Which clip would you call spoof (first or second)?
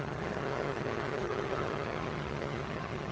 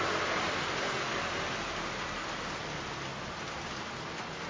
first